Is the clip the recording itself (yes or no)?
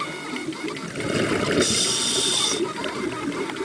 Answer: yes